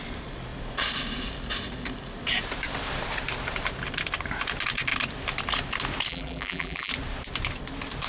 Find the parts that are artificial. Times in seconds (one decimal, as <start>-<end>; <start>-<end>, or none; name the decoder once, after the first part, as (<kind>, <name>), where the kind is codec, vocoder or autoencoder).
6.1-6.9 (vocoder, BigVGAN v2)